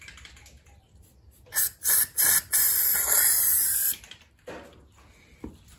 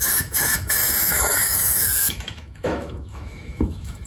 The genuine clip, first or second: first